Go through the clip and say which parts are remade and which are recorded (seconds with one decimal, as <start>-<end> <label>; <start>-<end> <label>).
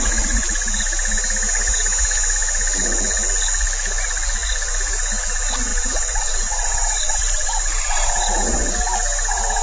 0.0-5.7 recorded; 5.7-8.7 remade; 8.7-9.6 recorded